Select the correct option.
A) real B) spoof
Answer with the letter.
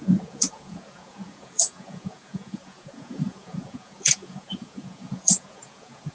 B